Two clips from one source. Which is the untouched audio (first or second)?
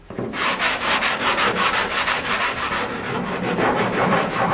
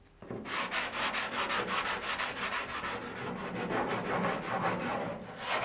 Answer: second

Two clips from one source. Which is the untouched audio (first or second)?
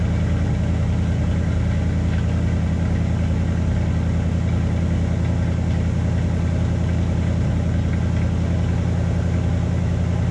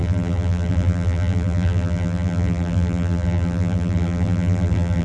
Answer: first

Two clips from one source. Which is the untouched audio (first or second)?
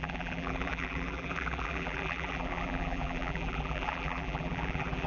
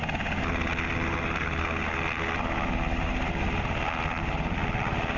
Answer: second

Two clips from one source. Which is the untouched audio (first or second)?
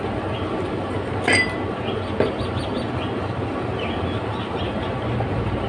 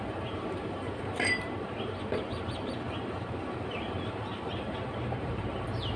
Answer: first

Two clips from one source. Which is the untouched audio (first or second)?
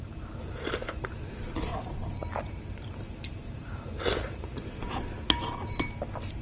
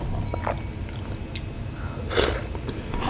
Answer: second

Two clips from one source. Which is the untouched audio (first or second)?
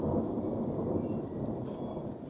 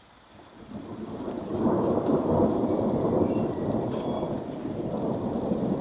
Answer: first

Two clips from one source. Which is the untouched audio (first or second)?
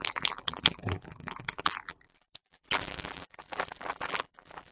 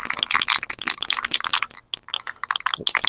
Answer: second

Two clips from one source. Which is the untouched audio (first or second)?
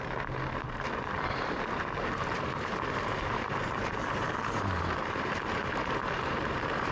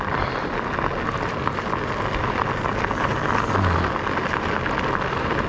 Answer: second